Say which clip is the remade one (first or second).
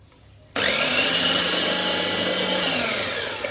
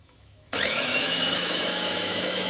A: second